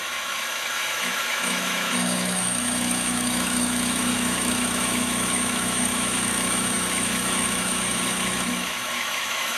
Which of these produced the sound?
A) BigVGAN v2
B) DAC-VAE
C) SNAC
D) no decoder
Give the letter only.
B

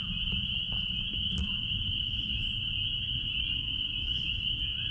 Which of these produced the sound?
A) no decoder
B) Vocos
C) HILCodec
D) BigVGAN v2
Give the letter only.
A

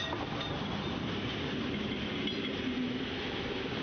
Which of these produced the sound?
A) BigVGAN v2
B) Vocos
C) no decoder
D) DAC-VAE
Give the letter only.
C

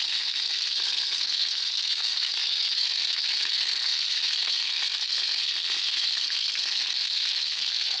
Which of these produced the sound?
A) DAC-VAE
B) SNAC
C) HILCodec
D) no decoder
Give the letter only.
B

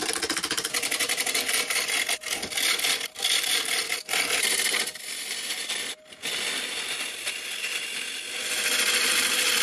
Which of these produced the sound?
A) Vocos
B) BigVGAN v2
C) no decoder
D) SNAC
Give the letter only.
C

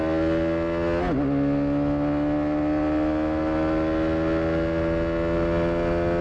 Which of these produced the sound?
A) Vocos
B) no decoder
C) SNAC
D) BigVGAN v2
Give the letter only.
B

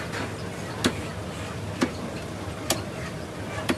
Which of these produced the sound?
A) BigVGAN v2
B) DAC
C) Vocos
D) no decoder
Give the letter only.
D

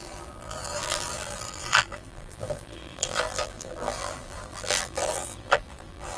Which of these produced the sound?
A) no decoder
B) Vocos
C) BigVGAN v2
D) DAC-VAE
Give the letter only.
C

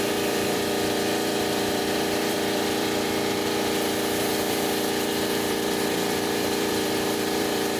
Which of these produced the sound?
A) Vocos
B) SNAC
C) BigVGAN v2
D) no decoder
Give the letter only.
C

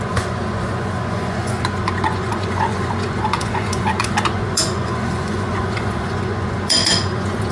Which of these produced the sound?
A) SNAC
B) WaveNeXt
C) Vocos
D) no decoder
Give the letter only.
C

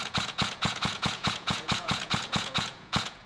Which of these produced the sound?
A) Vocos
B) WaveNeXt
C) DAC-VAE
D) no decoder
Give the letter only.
A